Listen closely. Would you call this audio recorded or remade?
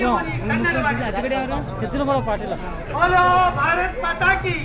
recorded